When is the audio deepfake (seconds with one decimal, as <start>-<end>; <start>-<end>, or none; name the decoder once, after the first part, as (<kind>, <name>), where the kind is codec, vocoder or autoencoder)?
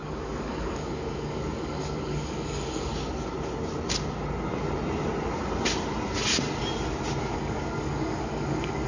0.0-2.9 (codec, DAC); 7.2-8.9